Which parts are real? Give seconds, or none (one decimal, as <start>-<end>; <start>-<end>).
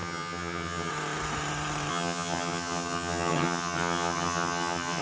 0.9-1.9